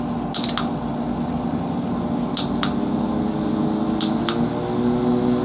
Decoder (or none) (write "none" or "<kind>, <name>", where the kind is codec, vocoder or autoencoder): none